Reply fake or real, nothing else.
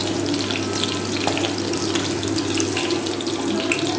real